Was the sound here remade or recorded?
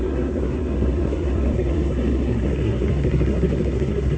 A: remade